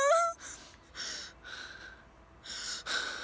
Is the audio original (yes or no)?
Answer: yes